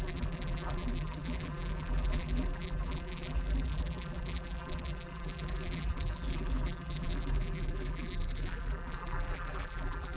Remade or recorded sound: remade